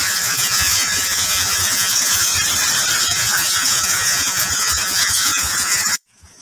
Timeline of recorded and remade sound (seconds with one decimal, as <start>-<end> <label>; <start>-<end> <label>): 0.0-2.3 remade; 2.3-3.0 recorded; 3.0-6.4 remade